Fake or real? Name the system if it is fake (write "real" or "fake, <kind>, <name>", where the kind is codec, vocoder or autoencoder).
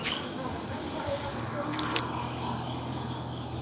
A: fake, codec, DAC